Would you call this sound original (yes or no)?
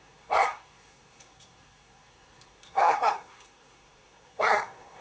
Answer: no